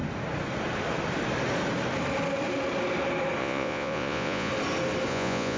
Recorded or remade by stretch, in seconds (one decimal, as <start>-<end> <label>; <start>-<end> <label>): 0.0-3.4 recorded; 3.4-4.5 remade; 4.5-5.1 recorded; 5.1-5.6 remade